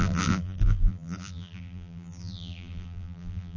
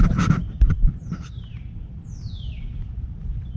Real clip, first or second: second